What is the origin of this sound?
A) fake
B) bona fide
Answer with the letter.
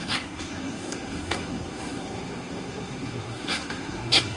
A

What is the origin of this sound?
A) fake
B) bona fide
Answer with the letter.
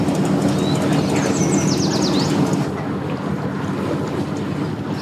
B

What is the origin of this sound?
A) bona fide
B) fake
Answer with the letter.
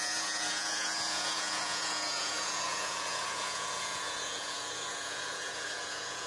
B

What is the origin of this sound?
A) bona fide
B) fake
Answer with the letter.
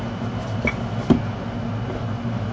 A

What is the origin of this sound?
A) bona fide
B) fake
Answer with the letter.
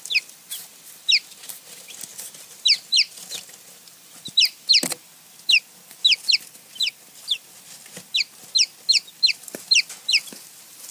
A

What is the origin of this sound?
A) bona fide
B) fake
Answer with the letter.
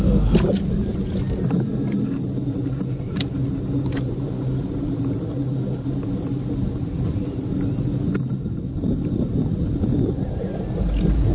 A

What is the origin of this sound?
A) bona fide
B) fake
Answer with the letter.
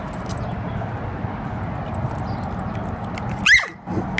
A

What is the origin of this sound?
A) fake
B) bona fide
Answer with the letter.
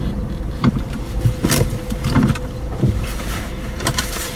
A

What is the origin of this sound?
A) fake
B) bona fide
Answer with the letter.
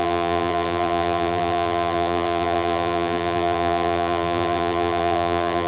A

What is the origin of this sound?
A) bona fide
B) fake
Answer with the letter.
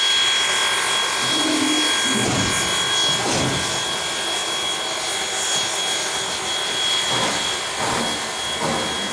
A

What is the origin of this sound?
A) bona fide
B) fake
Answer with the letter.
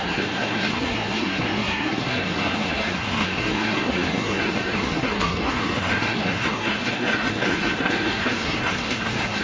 B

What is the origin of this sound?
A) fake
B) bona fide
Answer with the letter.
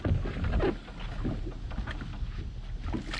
B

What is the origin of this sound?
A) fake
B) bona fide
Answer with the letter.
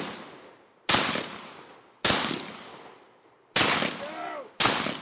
B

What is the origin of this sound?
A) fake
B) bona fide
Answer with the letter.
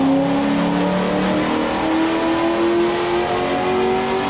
B